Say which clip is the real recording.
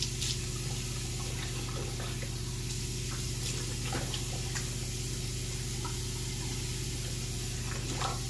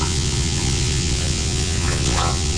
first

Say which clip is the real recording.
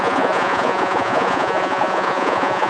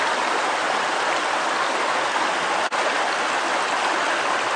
second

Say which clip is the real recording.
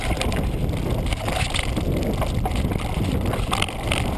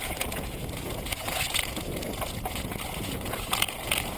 first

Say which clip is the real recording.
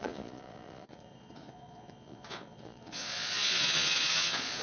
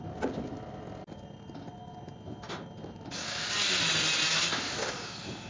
second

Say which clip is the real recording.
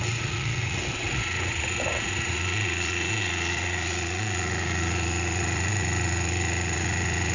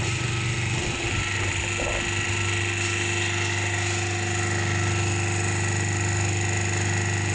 second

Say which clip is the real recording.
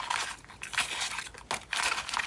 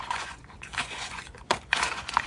first